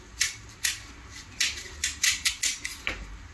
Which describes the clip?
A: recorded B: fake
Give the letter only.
A